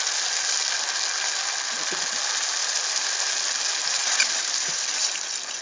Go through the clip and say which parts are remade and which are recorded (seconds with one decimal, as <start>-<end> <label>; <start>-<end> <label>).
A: 0.0-2.6 recorded; 2.6-3.3 remade; 3.3-4.0 recorded; 4.0-5.0 remade; 5.0-5.6 recorded